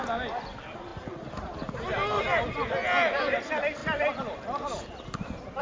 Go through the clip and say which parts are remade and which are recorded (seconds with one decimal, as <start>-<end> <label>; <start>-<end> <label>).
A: 0.0-5.6 recorded